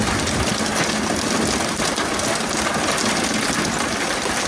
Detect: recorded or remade recorded